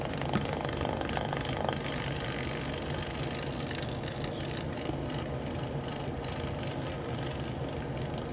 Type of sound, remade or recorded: recorded